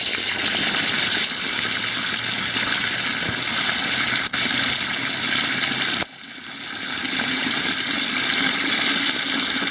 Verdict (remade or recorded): recorded